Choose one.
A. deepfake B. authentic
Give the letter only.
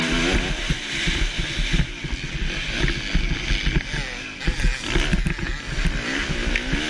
B